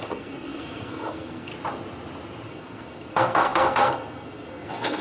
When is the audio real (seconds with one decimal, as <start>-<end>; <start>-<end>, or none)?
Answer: 1.5-2.5